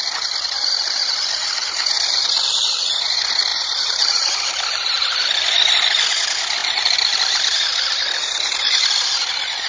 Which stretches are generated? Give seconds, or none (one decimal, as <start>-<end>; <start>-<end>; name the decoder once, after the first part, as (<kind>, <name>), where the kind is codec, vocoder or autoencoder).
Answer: 3.5-4.3 (vocoder, BigVGAN v2); 6.6-7.9

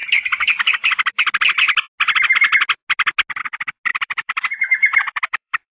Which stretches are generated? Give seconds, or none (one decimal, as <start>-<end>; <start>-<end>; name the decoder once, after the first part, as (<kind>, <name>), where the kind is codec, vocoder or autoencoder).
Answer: 3.9-5.7 (vocoder, BigVGAN v2)

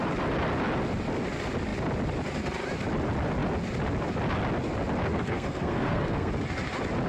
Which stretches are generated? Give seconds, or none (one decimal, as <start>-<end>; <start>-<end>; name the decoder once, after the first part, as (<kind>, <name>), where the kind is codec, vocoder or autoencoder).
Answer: 5.1-6.3 (codec, SNAC)

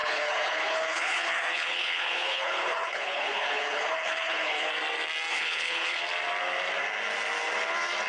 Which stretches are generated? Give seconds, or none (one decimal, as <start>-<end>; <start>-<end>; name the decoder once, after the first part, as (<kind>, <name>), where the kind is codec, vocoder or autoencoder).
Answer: 0.0-4.7 (codec, HILCodec); 5.3-6.0

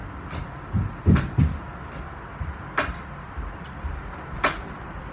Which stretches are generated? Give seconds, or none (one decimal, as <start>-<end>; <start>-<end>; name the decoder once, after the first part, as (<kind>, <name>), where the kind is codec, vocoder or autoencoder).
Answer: none

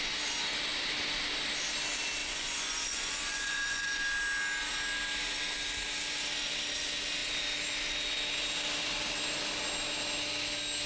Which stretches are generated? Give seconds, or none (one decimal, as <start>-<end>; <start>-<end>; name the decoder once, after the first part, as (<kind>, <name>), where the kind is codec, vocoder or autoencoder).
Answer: 2.2-4.0 (vocoder, Vocos)

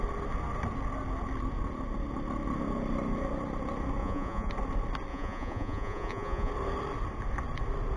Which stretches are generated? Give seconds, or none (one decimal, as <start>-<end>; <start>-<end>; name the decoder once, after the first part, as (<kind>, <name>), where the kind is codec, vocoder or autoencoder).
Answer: 4.0-4.5 (vocoder, Vocos); 5.1-6.5

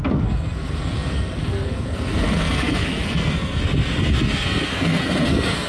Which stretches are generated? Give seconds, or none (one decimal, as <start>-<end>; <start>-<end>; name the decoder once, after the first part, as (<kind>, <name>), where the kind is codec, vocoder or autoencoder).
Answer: 0.0-5.7 (codec, SNAC)